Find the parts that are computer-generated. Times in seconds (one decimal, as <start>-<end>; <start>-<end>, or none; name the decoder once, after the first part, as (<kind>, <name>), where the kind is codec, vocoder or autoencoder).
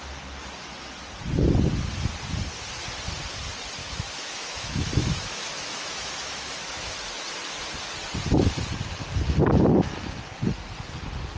3.8-6.9 (autoencoder, DAC-VAE)